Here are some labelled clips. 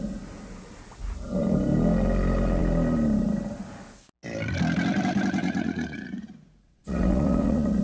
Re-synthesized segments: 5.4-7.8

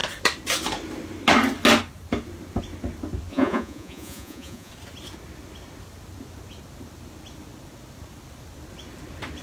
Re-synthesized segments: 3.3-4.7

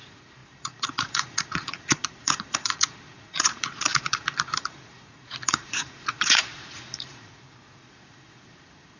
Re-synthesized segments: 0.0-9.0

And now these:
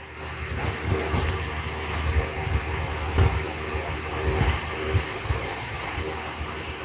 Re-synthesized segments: 5.1-6.0